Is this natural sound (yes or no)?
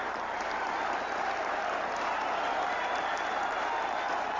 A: yes